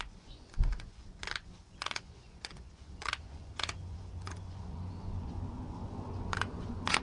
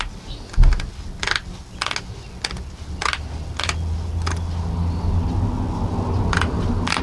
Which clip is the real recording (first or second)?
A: second